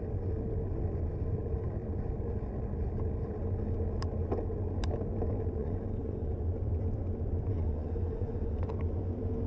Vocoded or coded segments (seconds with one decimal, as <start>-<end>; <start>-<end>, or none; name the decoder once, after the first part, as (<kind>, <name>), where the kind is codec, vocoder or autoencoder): 5.6-6.3 (vocoder, Vocos); 7.5-8.7